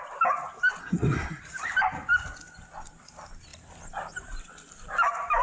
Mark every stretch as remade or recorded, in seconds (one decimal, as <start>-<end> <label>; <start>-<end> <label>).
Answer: 0.0-0.8 recorded; 0.8-1.4 remade; 1.4-5.4 recorded